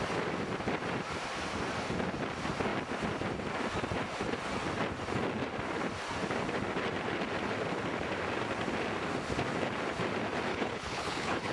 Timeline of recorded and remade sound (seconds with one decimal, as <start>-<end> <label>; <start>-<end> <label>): 0.0-10.5 recorded; 10.5-11.5 remade